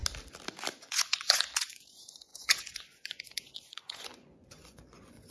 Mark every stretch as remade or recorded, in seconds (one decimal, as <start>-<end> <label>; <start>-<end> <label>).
0.0-0.8 recorded; 0.8-5.3 remade